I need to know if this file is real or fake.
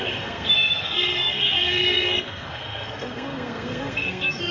fake